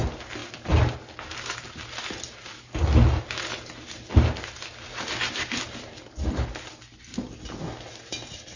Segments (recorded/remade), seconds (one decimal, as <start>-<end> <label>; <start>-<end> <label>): 0.0-8.6 recorded